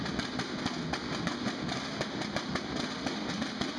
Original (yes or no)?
yes